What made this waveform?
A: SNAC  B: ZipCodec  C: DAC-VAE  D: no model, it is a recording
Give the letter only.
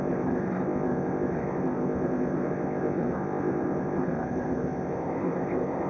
B